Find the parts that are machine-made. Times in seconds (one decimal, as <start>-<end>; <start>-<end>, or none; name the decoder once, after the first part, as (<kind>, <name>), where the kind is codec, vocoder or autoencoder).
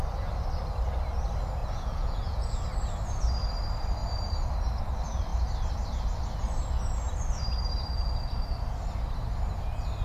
1.6-2.6 (vocoder, Vocos)